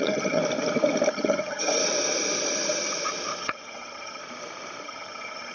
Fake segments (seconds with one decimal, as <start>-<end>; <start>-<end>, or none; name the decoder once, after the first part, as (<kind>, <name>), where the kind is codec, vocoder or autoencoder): 0.0-0.4 (vocoder, HiFi-GAN); 1.1-1.8; 3.4-4.2; 4.8-5.5